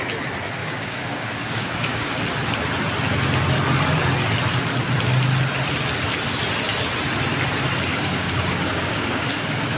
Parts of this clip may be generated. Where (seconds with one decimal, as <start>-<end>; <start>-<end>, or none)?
0.6-2.1; 7.9-9.8